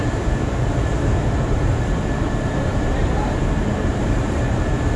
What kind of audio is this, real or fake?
fake